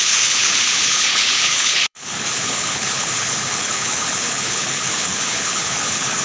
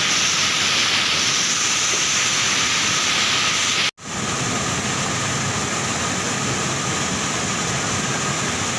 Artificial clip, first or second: first